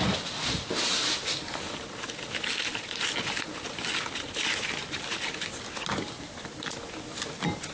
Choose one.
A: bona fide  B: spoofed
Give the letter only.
A